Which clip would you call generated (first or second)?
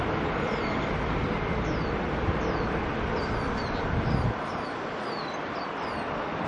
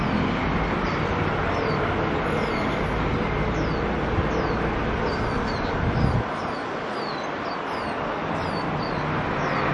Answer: first